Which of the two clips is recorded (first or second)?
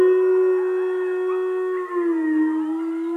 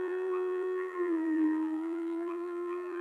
first